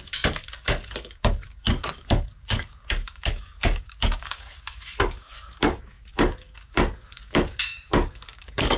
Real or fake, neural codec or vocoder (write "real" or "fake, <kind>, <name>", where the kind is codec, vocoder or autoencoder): fake, codec, DAC